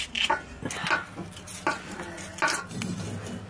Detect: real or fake real